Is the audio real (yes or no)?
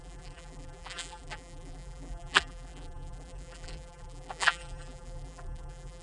no